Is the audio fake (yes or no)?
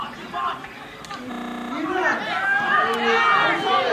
no